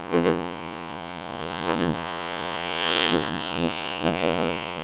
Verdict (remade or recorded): remade